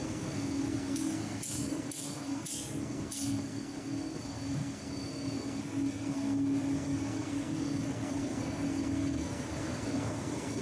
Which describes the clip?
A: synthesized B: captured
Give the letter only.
A